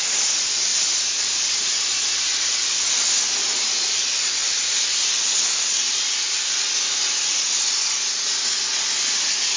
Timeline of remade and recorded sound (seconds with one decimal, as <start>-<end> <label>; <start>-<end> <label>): 0.0-9.6 recorded